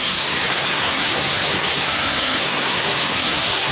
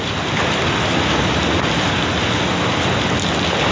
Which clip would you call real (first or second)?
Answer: second